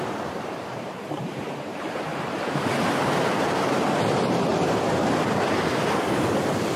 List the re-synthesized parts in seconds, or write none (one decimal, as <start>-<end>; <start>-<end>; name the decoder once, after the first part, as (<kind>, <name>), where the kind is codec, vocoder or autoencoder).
0.0-4.5 (vocoder, BigVGAN v2)